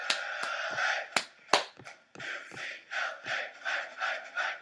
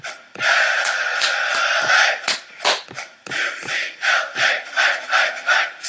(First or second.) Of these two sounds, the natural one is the first